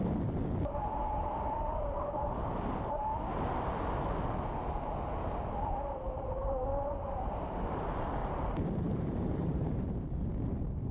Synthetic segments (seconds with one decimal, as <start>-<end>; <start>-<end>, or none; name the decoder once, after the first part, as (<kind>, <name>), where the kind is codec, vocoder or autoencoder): 8.2-10.0 (vocoder, BigVGAN v2)